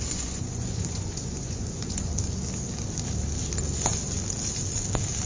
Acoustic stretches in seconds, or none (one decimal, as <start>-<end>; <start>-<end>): 2.1-5.3